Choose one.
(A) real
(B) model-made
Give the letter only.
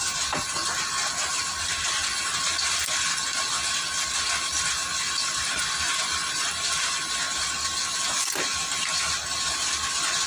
A